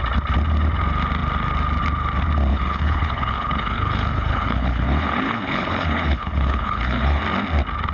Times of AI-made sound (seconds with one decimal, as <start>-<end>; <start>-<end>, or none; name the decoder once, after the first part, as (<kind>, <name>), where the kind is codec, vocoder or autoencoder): 2.5-7.2 (codec, HILCodec)